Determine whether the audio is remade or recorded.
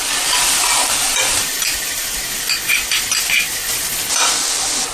remade